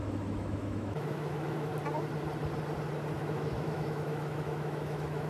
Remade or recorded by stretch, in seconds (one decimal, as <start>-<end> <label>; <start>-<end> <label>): 0.0-1.7 remade; 1.7-3.2 recorded; 3.2-5.3 remade